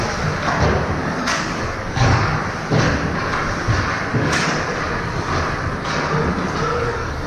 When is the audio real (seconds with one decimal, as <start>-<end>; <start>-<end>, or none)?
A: 0.0-1.0; 2.4-4.1; 4.7-6.7